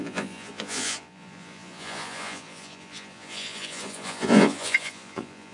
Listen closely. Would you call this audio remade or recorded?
remade